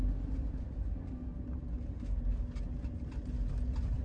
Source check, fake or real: real